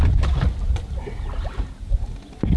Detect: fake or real real